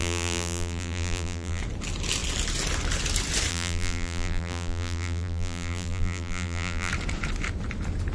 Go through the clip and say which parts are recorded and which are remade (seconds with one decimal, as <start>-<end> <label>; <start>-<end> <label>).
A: 0.0-1.6 remade; 1.6-3.5 recorded; 3.5-6.9 remade; 6.9-8.1 recorded